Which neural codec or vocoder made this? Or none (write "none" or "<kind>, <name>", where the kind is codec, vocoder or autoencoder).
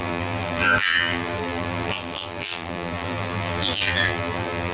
vocoder, BigVGAN v2